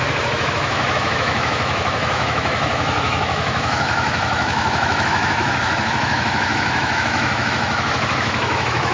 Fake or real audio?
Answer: fake